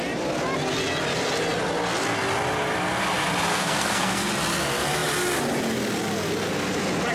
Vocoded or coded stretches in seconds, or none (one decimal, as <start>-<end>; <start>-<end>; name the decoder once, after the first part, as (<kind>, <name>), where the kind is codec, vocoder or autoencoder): 3.5-4.3 (codec, SNAC)